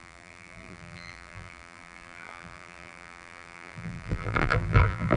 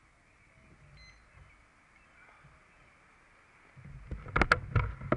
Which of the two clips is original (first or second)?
second